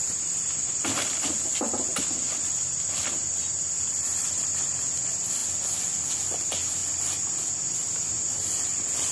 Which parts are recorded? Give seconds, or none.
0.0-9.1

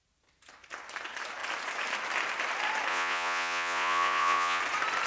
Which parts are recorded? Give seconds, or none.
0.0-2.9; 4.6-5.1

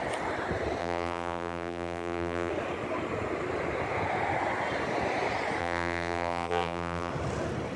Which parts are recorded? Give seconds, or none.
0.0-0.8; 2.5-5.6; 7.1-7.8

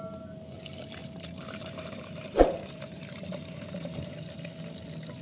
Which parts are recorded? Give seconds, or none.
0.0-1.0; 4.1-5.2

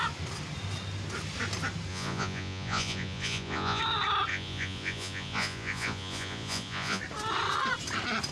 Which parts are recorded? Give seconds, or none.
0.0-1.9; 3.8-4.3; 7.0-8.3